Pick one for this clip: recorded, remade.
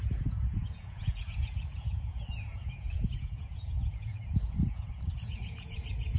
remade